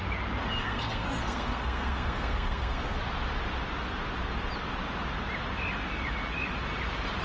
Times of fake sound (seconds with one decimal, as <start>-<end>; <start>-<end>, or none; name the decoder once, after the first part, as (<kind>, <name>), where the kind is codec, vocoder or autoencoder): 0.6-3.0 (codec, SNAC)

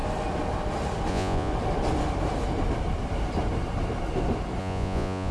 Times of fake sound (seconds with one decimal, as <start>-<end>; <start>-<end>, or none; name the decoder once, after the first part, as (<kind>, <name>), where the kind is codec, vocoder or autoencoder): 1.1-1.5 (vocoder, Vocos); 4.6-5.3

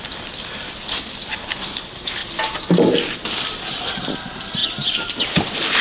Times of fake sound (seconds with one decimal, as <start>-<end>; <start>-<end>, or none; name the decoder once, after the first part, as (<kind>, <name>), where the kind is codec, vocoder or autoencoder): none

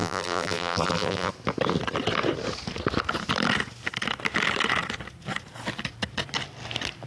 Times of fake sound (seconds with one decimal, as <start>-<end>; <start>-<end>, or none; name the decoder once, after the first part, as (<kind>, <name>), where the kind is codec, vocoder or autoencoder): 0.0-1.3 (vocoder, BigVGAN v2)

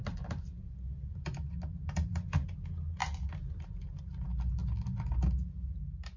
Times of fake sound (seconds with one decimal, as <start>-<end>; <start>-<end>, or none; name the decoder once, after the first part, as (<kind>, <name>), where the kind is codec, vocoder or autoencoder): none

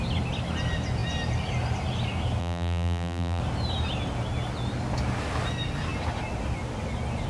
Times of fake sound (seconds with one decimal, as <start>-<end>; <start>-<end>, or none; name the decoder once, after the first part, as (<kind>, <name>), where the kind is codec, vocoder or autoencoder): 2.4-3.4 (vocoder, BigVGAN v2)

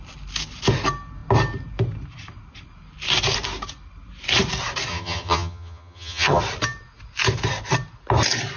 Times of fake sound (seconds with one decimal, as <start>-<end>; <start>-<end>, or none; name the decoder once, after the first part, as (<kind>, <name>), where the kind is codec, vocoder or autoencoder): 4.9-6.4 (vocoder, HiFi-GAN)